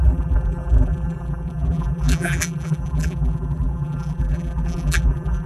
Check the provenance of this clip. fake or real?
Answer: fake